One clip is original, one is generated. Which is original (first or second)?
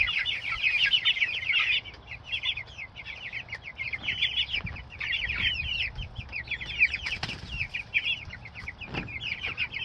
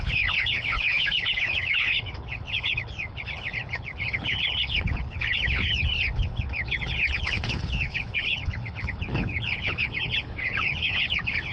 first